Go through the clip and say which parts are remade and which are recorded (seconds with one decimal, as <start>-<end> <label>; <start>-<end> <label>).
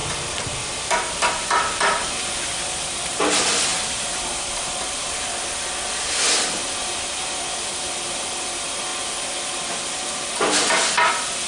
0.0-11.5 recorded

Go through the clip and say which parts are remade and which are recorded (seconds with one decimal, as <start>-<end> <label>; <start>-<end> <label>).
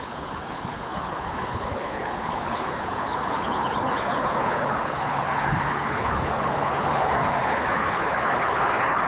0.0-9.1 remade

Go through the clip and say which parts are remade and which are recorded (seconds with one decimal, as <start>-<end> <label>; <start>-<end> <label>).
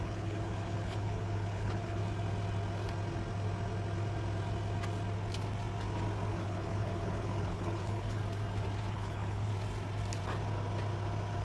0.0-2.0 remade; 2.0-6.3 recorded; 6.3-8.2 remade; 8.2-8.9 recorded; 8.9-9.5 remade; 9.5-11.4 recorded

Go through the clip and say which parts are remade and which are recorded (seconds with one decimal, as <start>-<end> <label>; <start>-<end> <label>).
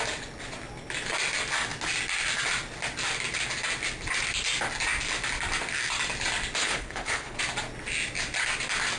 0.0-6.6 recorded; 6.6-7.4 remade; 7.4-9.0 recorded